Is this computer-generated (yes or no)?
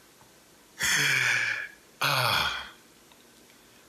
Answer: no